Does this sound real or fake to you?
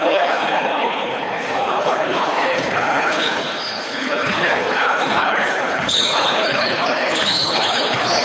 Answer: fake